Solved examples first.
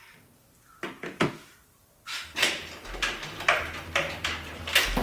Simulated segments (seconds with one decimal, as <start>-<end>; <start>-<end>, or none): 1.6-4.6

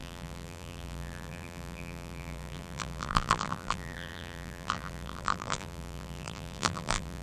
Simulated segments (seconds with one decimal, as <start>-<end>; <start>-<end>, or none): 0.0-7.2

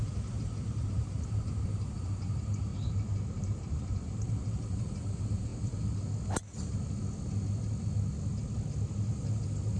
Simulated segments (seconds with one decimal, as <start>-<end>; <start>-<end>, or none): 0.0-2.7; 3.4-5.5; 9.1-9.8